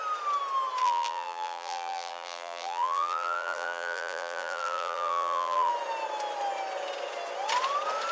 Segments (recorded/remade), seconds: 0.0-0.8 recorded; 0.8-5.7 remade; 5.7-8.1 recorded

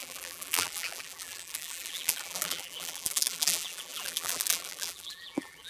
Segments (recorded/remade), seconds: 0.0-5.7 remade

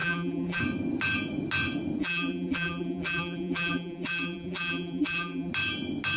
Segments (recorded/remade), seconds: 0.0-0.6 remade; 0.6-2.0 recorded; 2.0-5.5 remade; 5.5-6.2 recorded

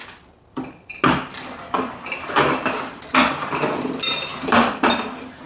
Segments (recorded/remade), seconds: 0.0-4.3 recorded; 4.3-5.1 remade; 5.1-5.5 recorded

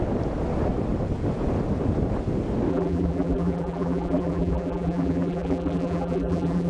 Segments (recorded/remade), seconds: 0.0-2.7 recorded; 2.7-6.7 remade

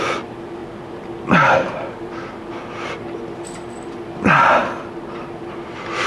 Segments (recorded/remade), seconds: 0.0-0.6 remade; 0.6-2.7 recorded; 2.7-4.6 remade; 4.6-5.2 recorded; 5.2-6.1 remade